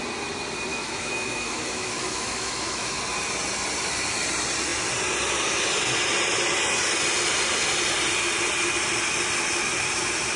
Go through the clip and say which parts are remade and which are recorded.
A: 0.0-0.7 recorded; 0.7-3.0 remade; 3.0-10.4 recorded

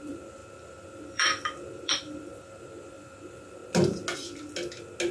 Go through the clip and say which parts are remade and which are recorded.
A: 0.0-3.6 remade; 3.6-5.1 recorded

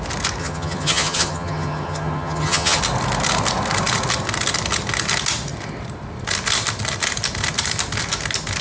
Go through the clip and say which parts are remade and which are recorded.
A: 0.0-0.4 recorded; 0.4-2.8 remade; 2.8-8.6 recorded

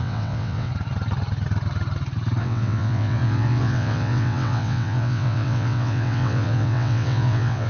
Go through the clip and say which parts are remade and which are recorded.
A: 0.0-0.7 remade; 0.7-2.4 recorded; 2.4-7.7 remade

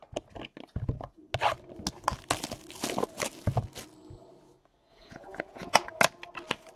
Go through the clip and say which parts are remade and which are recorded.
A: 0.0-4.9 recorded; 4.9-6.0 remade; 6.0-6.8 recorded